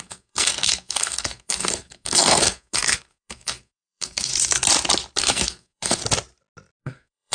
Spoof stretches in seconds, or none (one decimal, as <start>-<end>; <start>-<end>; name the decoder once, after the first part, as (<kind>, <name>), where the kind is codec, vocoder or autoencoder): 0.0-4.3 (codec, SNAC); 5.2-6.0; 6.8-7.3